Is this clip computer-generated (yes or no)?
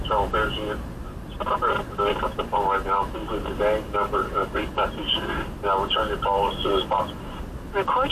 no